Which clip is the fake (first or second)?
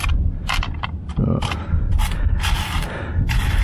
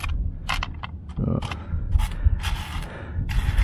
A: first